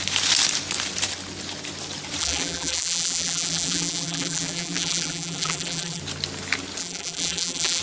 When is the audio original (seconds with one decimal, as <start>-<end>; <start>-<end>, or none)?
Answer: 0.0-2.2; 6.0-6.8